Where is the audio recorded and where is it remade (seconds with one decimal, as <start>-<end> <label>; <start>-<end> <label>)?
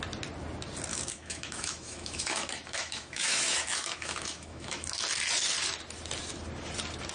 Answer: 0.0-0.9 recorded; 0.9-5.0 remade; 5.0-7.1 recorded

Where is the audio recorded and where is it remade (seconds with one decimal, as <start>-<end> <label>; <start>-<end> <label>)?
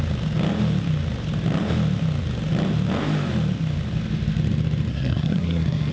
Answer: 0.0-4.9 recorded; 4.9-5.9 remade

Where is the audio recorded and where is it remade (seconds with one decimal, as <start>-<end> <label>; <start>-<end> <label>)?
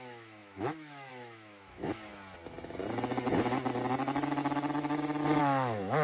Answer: 0.0-2.1 remade; 2.1-5.4 recorded; 5.4-6.0 remade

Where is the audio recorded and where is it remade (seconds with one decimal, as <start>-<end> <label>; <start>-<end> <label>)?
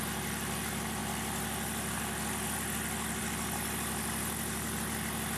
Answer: 0.0-5.4 recorded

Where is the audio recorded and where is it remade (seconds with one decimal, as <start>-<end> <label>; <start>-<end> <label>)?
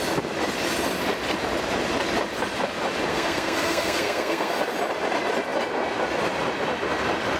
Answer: 0.0-3.1 recorded; 3.1-4.5 remade; 4.5-7.4 recorded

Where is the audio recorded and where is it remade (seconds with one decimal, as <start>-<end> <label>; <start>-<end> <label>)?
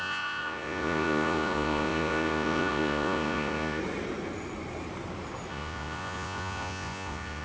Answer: 0.0-3.8 remade; 3.8-5.5 recorded; 5.5-7.4 remade